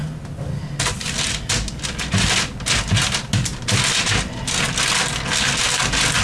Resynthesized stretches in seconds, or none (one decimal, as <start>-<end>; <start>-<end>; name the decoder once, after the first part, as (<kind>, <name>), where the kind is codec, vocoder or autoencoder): none